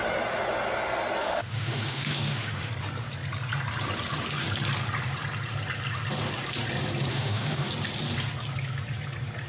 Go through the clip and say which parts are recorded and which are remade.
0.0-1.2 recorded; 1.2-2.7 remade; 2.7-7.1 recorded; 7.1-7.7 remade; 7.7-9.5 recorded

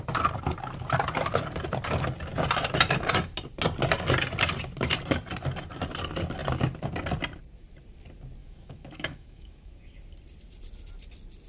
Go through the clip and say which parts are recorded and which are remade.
0.0-8.4 recorded; 8.4-9.7 remade; 9.7-11.5 recorded

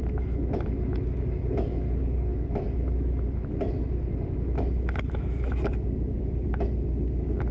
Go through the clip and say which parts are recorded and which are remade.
0.0-7.5 remade

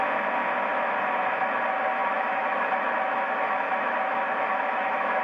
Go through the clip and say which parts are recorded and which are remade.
0.0-0.7 recorded; 0.7-1.5 remade; 1.5-2.0 recorded; 2.0-5.2 remade

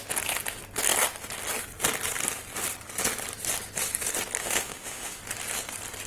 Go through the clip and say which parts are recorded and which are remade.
0.0-4.4 recorded; 4.4-5.2 remade; 5.2-6.1 recorded

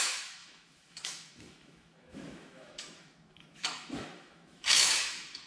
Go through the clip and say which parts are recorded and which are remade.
0.0-5.5 remade

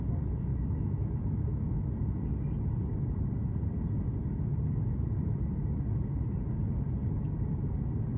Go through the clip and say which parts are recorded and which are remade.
0.0-0.5 recorded; 0.5-1.8 remade; 1.8-8.2 recorded

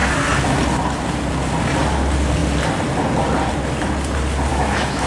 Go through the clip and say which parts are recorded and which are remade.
0.0-4.5 recorded; 4.5-5.1 remade